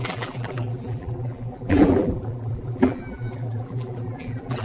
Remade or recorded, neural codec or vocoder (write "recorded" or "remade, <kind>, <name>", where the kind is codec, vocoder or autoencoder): remade, vocoder, BigVGAN v2